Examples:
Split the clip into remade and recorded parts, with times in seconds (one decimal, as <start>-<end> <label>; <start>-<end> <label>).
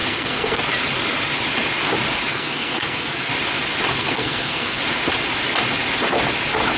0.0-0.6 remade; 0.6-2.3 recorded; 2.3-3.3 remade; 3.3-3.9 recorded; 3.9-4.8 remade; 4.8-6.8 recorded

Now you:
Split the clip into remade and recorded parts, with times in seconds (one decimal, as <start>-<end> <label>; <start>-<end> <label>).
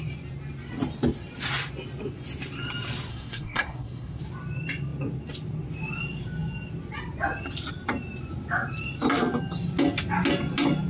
0.0-3.1 recorded; 3.1-4.2 remade; 4.2-10.9 recorded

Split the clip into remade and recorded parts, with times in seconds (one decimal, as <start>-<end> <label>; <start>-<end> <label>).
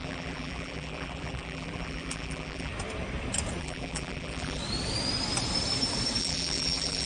0.0-2.7 remade; 2.7-3.6 recorded; 3.6-4.6 remade; 4.6-6.2 recorded; 6.2-7.1 remade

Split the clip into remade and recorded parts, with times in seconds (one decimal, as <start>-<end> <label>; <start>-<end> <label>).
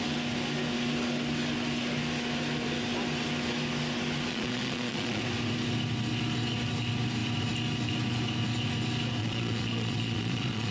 0.0-4.3 recorded; 4.3-5.2 remade; 5.2-9.2 recorded; 9.2-10.7 remade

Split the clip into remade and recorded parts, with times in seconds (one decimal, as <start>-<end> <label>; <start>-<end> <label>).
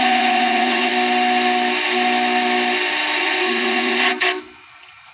0.0-0.9 remade; 0.9-3.2 recorded; 3.2-4.1 remade; 4.1-5.1 recorded